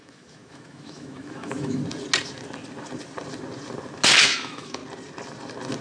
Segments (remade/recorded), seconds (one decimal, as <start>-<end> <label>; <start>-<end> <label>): 0.0-1.8 remade; 1.8-4.2 recorded; 4.2-4.8 remade; 4.8-5.8 recorded